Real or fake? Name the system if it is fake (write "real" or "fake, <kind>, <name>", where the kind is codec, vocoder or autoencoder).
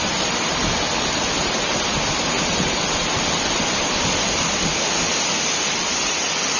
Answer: real